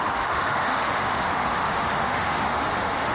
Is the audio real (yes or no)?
no